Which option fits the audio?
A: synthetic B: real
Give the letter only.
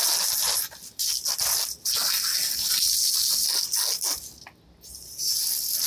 B